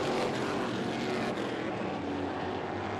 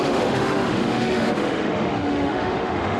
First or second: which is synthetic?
second